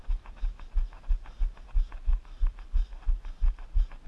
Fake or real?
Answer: real